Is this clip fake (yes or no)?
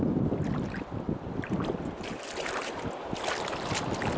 no